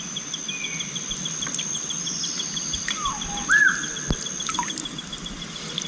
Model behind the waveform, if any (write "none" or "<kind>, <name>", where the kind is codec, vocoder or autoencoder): none